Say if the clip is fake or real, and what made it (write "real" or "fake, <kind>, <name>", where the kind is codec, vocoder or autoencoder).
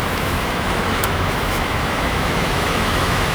fake, autoencoder, DAC-VAE